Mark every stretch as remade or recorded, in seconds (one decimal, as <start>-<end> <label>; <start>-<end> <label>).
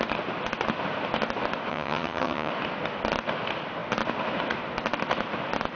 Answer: 0.0-1.7 recorded; 1.7-2.5 remade; 2.5-5.8 recorded